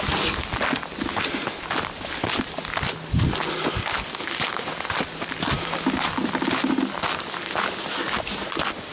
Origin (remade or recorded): recorded